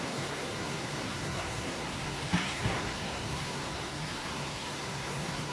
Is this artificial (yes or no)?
yes